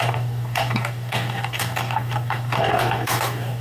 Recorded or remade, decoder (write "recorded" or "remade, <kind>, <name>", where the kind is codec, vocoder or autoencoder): remade, codec, DAC